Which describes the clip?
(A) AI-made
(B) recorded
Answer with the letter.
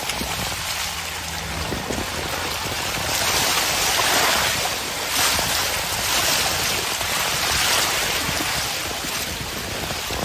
B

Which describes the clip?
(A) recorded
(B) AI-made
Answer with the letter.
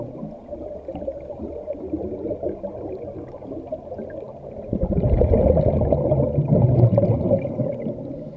A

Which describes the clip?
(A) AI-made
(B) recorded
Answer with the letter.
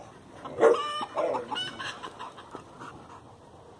B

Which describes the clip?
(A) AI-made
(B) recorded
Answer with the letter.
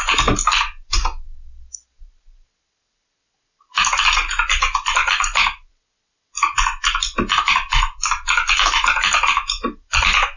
B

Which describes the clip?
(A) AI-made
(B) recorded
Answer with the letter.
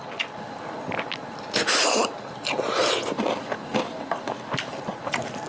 B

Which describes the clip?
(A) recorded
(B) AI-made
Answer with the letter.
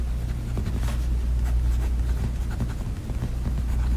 A